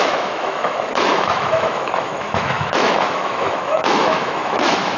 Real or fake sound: fake